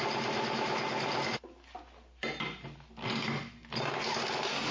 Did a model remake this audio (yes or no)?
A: no